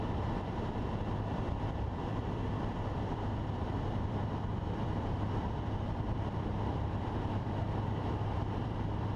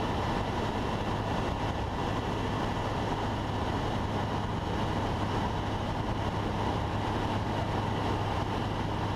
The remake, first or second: first